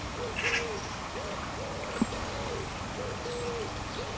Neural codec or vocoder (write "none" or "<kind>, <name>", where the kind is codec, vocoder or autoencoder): none